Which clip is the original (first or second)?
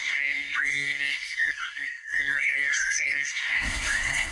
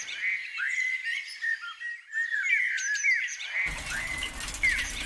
second